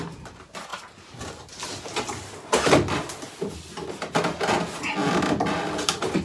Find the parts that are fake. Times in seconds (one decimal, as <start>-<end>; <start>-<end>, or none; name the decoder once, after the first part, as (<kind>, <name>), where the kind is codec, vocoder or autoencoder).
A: none